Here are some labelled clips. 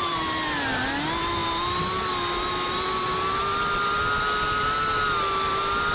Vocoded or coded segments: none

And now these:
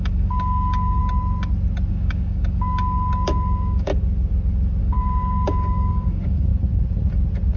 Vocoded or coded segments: 0.0-1.0; 1.9-3.9; 4.8-6.5

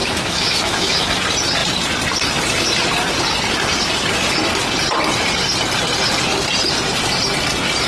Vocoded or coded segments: 0.0-1.0

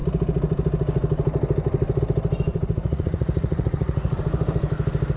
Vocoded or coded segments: 2.5-4.2

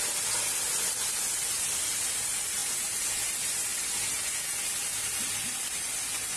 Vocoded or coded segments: none

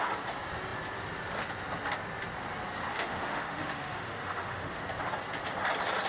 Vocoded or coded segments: 2.9-4.8